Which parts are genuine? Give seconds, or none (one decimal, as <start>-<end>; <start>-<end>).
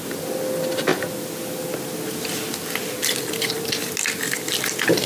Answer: 0.0-5.1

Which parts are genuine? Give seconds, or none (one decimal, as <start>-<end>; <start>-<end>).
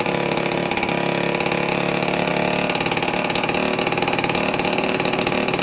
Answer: 0.6-1.7; 2.3-4.0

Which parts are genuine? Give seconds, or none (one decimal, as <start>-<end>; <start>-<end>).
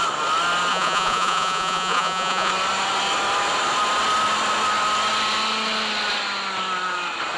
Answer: 0.0-0.7; 2.5-7.4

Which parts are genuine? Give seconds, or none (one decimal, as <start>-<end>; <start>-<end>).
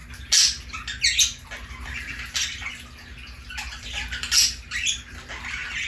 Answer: 0.0-5.9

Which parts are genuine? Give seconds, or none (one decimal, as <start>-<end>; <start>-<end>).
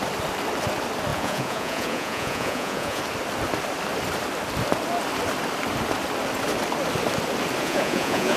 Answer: 0.0-1.1; 3.0-7.6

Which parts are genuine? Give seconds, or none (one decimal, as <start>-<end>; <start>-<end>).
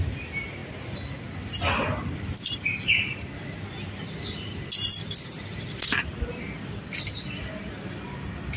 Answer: 0.0-8.6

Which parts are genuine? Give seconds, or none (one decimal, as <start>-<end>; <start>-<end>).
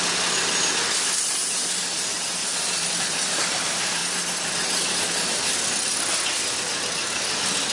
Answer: 0.0-2.4; 3.4-7.7